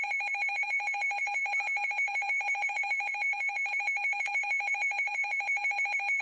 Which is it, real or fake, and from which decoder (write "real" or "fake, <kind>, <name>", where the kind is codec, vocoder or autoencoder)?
fake, vocoder, BigVGAN v2